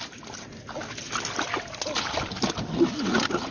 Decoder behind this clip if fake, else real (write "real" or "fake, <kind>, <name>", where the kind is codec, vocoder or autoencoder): real